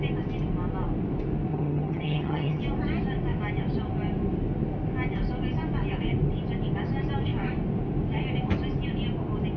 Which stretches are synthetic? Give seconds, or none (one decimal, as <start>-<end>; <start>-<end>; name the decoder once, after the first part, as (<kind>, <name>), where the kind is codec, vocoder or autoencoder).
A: 1.5-2.6 (vocoder, HiFi-GAN)